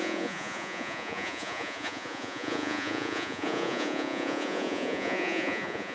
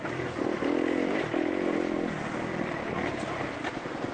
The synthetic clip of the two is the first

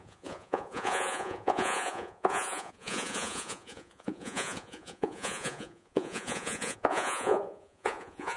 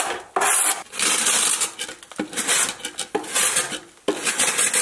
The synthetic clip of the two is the first